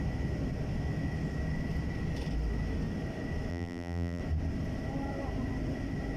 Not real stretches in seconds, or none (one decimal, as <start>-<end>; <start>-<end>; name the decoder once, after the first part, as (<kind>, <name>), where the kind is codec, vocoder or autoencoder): 3.5-4.2 (vocoder, BigVGAN v2)

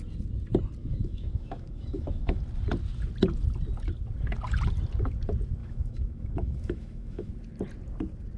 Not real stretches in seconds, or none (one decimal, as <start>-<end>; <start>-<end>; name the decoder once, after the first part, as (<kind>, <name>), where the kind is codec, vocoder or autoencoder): 0.8-2.4 (autoencoder, DAC-VAE); 5.6-7.3

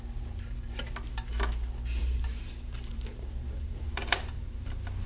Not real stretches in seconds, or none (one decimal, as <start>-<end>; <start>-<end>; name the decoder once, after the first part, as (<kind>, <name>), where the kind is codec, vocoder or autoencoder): 2.0-5.1 (vocoder, BigVGAN v2)

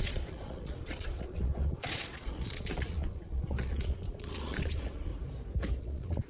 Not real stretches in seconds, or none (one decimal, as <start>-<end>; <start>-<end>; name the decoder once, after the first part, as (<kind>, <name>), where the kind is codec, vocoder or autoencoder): 0.0-5.1 (vocoder, Vocos); 5.8-6.3

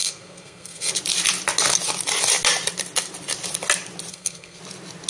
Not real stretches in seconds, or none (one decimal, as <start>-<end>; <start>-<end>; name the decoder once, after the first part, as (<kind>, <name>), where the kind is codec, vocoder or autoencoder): 0.0-0.9 (codec, SNAC); 4.1-4.6

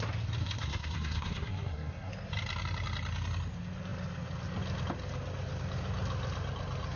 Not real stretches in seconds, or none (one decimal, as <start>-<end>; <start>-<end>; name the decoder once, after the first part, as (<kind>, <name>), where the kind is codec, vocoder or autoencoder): 0.4-2.1 (codec, SNAC)

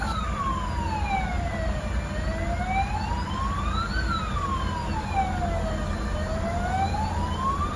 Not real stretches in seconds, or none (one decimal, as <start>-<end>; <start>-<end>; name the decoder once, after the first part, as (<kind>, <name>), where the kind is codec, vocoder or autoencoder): none

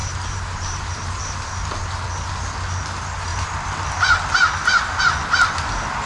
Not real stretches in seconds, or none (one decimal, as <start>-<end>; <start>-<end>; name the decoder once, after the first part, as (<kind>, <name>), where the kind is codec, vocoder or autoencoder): 0.0-1.2 (vocoder, BigVGAN v2)